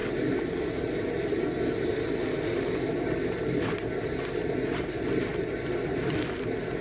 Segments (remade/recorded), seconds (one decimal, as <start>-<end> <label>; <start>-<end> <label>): 0.0-6.8 recorded

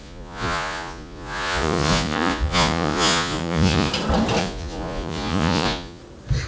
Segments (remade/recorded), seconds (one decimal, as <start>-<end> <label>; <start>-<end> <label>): 0.0-3.9 remade; 3.9-4.4 recorded; 4.4-6.0 remade; 6.0-6.5 recorded